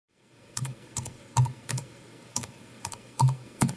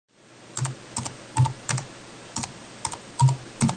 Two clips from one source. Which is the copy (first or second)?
first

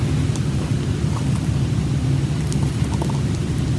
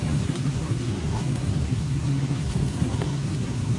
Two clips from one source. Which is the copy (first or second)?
second